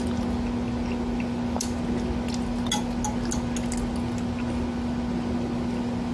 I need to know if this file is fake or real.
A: real